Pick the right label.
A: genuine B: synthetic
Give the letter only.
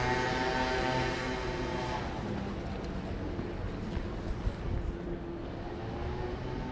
A